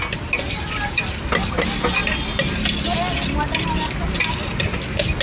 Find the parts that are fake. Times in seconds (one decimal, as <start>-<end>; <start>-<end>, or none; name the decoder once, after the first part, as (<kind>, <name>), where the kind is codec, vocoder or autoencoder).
none

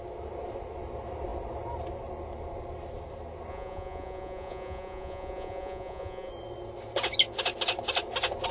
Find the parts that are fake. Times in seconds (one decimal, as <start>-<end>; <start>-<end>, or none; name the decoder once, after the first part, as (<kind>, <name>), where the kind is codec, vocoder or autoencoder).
3.5-6.3 (vocoder, Vocos)

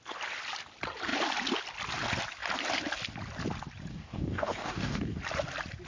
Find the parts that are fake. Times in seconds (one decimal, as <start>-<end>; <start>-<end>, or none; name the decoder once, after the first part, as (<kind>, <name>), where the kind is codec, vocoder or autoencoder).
3.9-5.2 (codec, DAC)

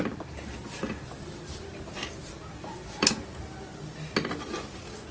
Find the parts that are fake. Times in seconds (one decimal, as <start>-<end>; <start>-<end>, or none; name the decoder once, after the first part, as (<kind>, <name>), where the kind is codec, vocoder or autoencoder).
0.0-3.1 (vocoder, BigVGAN v2)

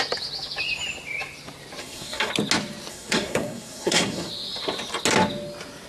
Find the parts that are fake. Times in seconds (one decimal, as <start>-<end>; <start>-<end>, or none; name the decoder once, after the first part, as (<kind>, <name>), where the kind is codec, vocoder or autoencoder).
1.8-2.3 (codec, SNAC); 2.9-4.3

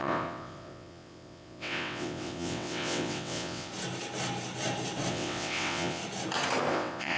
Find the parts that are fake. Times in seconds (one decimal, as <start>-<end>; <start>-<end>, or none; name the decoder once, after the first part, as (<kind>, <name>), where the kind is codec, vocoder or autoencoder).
0.0-3.7 (vocoder, WaveNeXt); 5.1-6.0; 6.7-7.2